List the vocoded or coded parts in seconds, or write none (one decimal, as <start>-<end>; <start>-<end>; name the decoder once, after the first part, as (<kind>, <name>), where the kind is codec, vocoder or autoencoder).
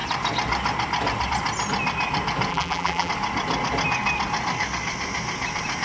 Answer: 2.5-3.1 (vocoder, BigVGAN v2)